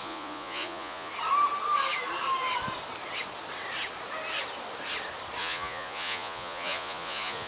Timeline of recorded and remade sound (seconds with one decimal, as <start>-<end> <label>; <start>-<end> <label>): 0.0-1.1 remade; 1.1-5.4 recorded; 5.4-7.5 remade